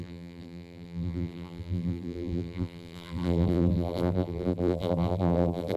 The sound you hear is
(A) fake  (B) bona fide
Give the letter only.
A